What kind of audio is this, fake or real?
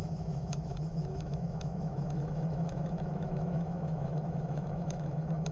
fake